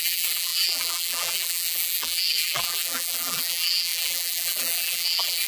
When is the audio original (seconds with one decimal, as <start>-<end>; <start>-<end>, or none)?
none